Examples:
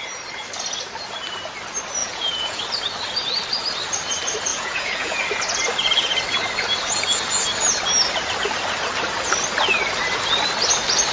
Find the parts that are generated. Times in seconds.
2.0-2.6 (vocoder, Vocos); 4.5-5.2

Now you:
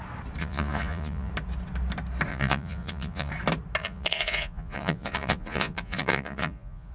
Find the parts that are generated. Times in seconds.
0.4-1.3 (vocoder, Vocos); 2.3-3.3; 3.8-6.9

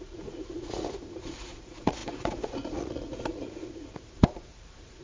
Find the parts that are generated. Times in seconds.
0.0-5.0 (vocoder, Vocos)

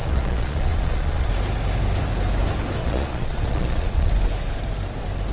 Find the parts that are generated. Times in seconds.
0.0-1.3 (vocoder, Vocos); 2.8-4.1

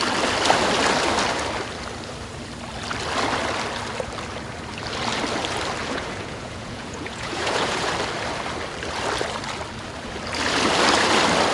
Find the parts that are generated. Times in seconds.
5.8-7.9 (vocoder, Vocos)